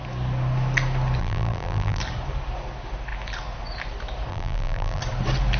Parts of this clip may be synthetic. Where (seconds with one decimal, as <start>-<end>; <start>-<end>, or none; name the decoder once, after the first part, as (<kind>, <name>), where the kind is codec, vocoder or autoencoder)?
1.2-2.0 (vocoder, BigVGAN v2); 4.3-5.0